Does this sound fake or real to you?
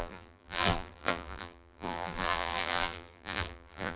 fake